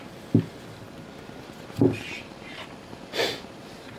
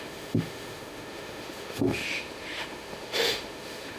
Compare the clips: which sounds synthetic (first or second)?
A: second